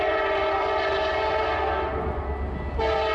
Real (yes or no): yes